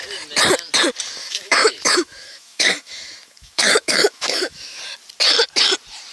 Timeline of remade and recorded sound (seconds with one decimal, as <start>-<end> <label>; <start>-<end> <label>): 0.0-1.2 recorded; 1.2-4.8 remade; 4.8-6.1 recorded